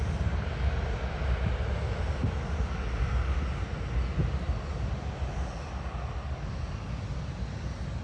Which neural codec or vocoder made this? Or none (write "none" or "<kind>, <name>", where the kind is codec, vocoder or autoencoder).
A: none